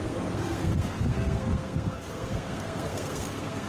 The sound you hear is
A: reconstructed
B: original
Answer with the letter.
A